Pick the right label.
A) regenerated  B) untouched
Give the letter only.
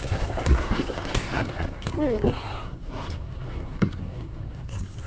A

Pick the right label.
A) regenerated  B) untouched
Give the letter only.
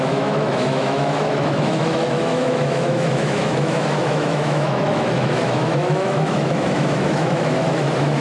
A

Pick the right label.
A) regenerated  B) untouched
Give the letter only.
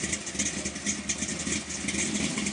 B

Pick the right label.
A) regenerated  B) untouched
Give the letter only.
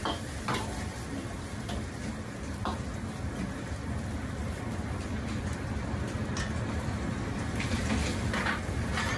B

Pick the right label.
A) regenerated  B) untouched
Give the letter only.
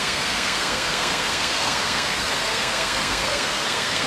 A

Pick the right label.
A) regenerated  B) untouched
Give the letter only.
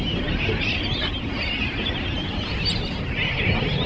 A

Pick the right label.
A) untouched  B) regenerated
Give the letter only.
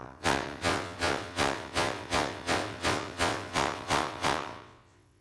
B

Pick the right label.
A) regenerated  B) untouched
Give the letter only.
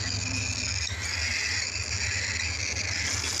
B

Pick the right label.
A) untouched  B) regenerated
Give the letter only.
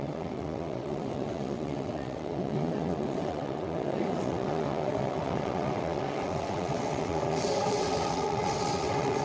B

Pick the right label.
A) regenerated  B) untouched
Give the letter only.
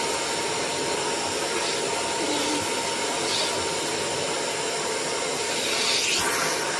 B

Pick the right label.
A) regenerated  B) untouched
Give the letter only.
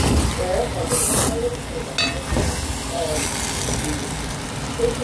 B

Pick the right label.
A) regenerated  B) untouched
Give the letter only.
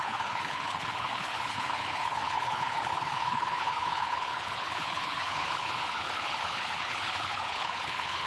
A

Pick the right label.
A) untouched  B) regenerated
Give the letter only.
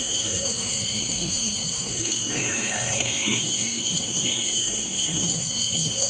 B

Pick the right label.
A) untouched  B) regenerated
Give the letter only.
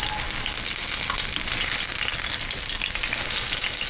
A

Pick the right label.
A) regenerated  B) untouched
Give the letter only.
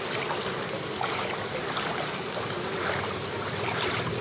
B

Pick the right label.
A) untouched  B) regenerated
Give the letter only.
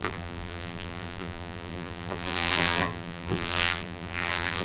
B